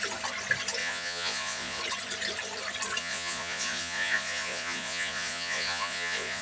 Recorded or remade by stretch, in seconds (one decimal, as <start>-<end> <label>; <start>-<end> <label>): 0.0-0.8 recorded; 0.8-1.8 remade; 1.8-3.0 recorded; 3.0-6.4 remade